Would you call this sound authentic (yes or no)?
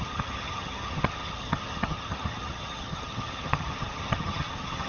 no